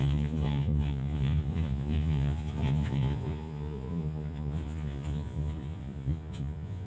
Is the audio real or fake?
fake